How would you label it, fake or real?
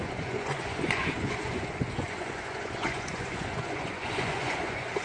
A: fake